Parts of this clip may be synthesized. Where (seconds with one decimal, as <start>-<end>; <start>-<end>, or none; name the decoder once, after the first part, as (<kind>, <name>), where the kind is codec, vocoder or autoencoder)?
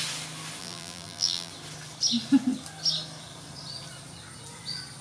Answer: 0.6-1.5 (vocoder, BigVGAN v2)